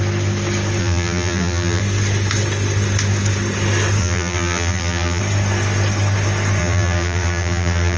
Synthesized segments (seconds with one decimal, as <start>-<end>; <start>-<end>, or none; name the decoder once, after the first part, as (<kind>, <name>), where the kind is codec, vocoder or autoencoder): 0.8-1.8 (vocoder, BigVGAN v2); 4.0-5.2; 6.6-8.0

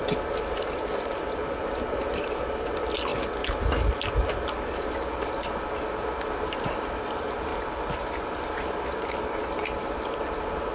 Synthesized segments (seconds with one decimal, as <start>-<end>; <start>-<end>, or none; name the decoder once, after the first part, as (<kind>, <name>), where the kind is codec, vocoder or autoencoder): 0.0-3.1 (vocoder, BigVGAN v2); 5.9-7.5; 8.2-10.7